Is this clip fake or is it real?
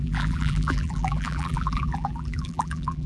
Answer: fake